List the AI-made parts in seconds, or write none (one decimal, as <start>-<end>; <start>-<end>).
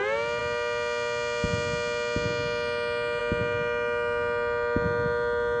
none